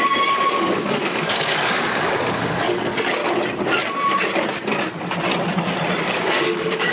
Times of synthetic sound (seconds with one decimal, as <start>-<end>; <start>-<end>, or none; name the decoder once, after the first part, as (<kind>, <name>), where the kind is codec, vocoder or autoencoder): 0.0-3.2 (codec, DAC); 6.0-6.9